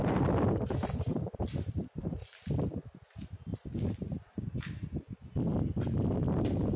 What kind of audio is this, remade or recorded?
recorded